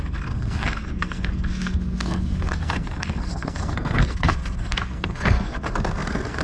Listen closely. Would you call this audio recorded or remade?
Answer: remade